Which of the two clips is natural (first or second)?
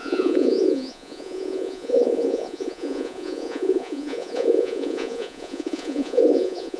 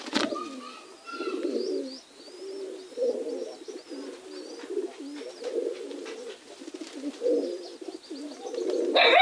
second